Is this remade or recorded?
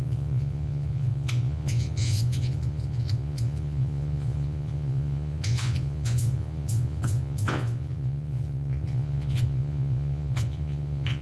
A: remade